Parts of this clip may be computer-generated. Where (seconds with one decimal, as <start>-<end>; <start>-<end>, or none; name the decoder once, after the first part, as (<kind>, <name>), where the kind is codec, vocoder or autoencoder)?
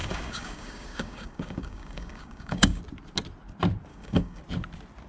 0.0-2.8 (codec, DAC); 3.9-4.4